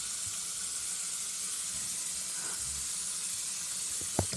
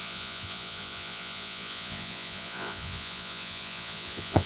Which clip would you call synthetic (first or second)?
second